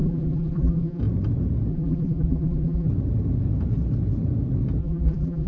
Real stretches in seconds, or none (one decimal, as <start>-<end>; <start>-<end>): 1.0-1.7; 2.9-4.8